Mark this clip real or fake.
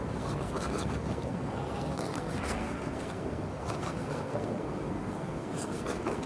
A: fake